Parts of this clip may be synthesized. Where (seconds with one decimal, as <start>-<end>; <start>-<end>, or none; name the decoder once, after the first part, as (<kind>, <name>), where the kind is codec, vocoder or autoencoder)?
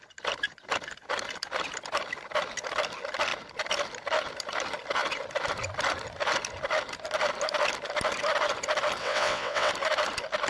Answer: 9.0-9.7 (vocoder, WaveNeXt)